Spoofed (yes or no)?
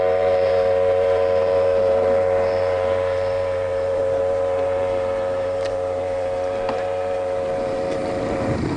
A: yes